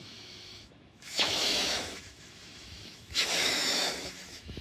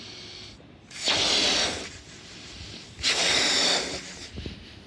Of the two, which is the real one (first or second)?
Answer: second